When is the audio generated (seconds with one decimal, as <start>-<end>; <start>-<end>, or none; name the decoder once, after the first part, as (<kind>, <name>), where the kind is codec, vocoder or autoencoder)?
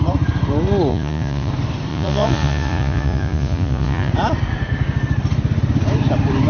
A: 0.9-1.5 (vocoder, Vocos); 1.9-4.1